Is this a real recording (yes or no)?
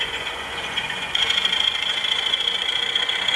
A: no